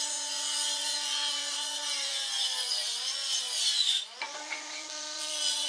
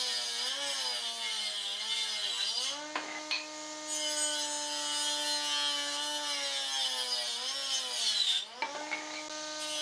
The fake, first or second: first